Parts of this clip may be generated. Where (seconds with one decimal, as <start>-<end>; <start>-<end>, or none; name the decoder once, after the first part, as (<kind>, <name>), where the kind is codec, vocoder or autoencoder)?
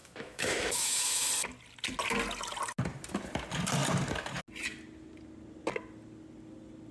0.0-1.3 (autoencoder, DAC-VAE)